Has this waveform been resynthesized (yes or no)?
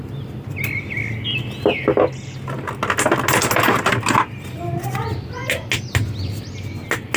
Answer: no